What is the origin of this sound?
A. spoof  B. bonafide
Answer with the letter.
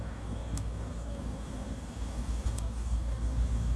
A